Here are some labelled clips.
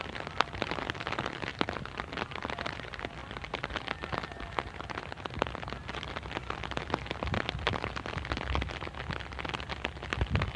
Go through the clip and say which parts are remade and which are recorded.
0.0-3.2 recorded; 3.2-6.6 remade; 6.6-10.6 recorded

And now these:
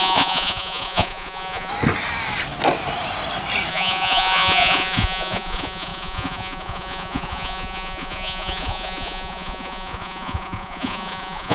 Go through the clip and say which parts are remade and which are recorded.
0.0-1.7 remade; 1.7-3.7 recorded; 3.7-11.5 remade

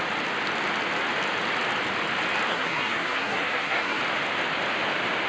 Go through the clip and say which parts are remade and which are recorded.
0.0-2.5 recorded; 2.5-4.0 remade; 4.0-5.3 recorded

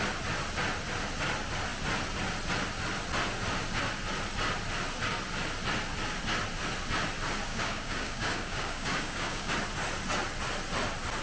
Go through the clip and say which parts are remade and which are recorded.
0.0-7.5 recorded; 7.5-9.5 remade; 9.5-11.2 recorded

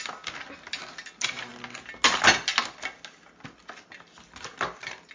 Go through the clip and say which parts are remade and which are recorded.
0.0-5.1 recorded

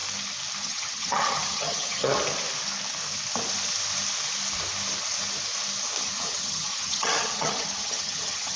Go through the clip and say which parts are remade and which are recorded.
0.0-0.6 recorded; 0.6-2.1 remade; 2.1-6.0 recorded; 6.0-8.6 remade

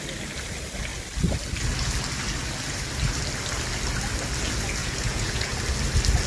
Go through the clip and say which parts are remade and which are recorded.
0.0-4.8 recorded; 4.8-5.6 remade; 5.6-6.3 recorded